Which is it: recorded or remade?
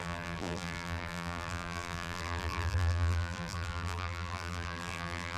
remade